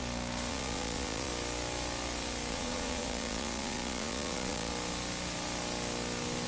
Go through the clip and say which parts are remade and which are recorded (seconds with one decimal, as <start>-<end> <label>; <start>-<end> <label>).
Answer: 0.0-0.5 recorded; 0.5-1.3 remade; 1.3-2.5 recorded; 2.5-4.7 remade; 4.7-6.5 recorded